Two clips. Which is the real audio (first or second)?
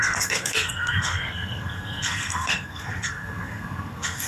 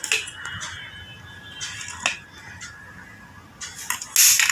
second